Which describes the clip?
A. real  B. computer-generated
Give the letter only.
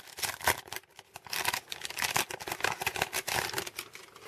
A